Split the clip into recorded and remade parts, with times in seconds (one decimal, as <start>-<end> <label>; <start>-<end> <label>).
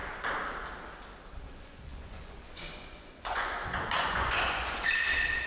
0.0-1.5 recorded; 1.5-4.8 remade; 4.8-5.5 recorded